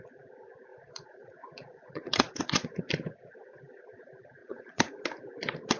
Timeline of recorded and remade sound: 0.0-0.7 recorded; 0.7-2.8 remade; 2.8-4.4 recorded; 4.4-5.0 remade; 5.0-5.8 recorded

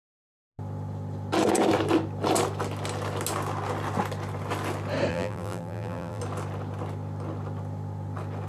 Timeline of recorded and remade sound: 0.0-5.1 recorded; 5.1-6.2 remade; 6.2-8.5 recorded

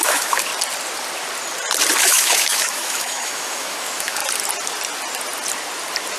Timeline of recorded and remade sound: 0.0-0.5 remade; 0.5-2.0 recorded; 2.0-4.2 remade; 4.2-6.2 recorded

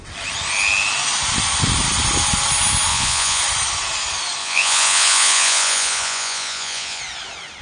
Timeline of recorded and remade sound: 0.0-2.9 recorded; 2.9-3.4 remade; 3.4-4.4 recorded; 4.4-7.0 remade; 7.0-7.6 recorded

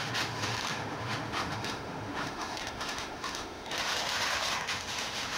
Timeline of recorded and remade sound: 0.0-5.4 remade

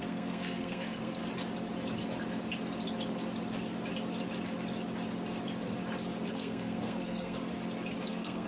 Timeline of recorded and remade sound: 0.0-1.2 remade; 1.2-6.3 recorded; 6.3-7.5 remade; 7.5-8.1 recorded; 8.1-8.5 remade